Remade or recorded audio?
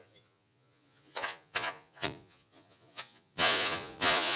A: remade